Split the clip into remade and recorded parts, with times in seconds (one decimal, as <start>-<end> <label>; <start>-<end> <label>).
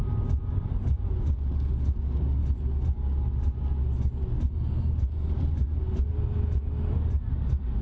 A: 0.0-7.8 recorded